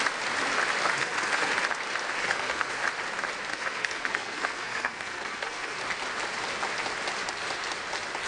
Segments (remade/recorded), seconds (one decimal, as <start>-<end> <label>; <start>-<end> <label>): 0.0-1.0 recorded; 1.0-1.5 remade; 1.5-2.2 recorded; 2.2-2.7 remade; 2.7-3.5 recorded; 3.5-5.8 remade; 5.8-8.3 recorded